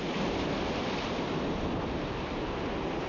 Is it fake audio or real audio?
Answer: real